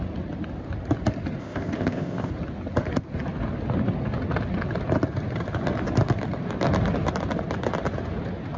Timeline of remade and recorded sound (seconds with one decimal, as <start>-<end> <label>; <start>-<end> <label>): 0.0-1.4 recorded; 1.4-2.3 remade; 2.3-8.6 recorded